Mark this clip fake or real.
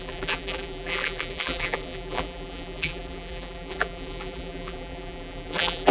fake